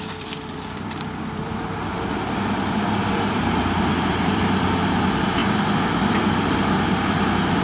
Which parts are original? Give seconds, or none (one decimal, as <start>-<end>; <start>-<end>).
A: 1.9-3.0; 5.4-7.6